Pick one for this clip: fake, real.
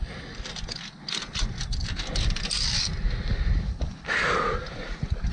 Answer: real